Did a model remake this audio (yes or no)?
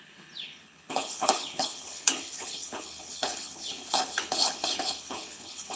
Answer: yes